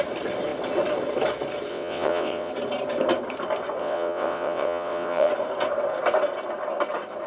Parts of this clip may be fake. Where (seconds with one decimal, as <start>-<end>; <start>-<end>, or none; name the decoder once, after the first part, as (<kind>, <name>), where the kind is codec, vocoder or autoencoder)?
1.7-2.5 (vocoder, WaveNeXt); 3.8-5.3